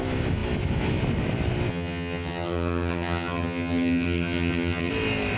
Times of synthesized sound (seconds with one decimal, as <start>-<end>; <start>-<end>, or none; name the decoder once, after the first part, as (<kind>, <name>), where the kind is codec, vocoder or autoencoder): 1.7-4.9 (vocoder, HiFi-GAN)